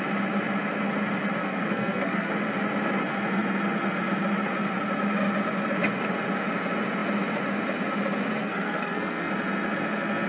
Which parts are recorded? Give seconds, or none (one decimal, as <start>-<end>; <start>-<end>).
0.0-1.4; 2.3-8.4; 9.3-10.3